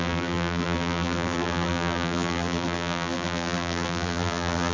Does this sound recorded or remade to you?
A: remade